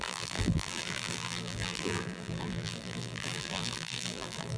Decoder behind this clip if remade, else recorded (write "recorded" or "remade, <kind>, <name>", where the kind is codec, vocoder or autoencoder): remade, vocoder, BigVGAN v2